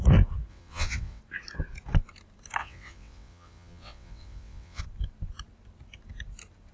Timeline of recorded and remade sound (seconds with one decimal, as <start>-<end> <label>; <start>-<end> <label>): 0.0-0.5 recorded; 0.5-1.2 remade; 1.2-2.6 recorded; 2.6-4.8 remade; 4.8-6.7 recorded